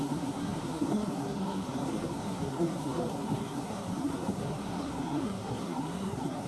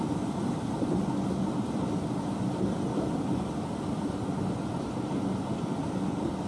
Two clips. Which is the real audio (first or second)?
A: second